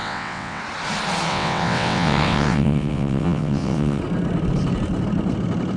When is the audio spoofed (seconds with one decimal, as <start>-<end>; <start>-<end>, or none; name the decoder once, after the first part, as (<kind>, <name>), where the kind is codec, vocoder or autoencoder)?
0.0-0.6 (vocoder, WaveNeXt); 1.3-4.0